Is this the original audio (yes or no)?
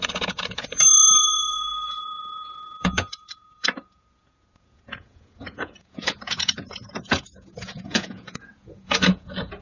no